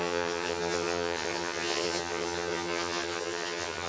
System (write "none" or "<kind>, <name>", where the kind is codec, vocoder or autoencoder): vocoder, HiFi-GAN